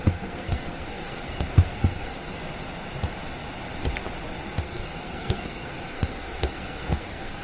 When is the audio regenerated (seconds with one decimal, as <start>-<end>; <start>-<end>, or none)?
0.0-2.4; 4.6-7.4